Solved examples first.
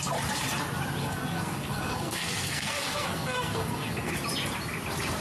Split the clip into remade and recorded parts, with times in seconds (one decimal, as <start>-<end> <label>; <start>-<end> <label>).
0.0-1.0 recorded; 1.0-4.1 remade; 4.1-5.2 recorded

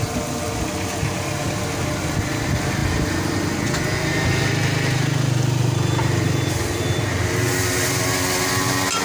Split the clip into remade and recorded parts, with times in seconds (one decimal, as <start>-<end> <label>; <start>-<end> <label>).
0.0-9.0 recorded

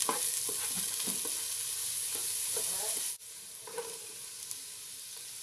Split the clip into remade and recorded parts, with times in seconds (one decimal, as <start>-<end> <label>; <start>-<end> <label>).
0.0-1.8 recorded; 1.8-4.3 remade; 4.3-5.4 recorded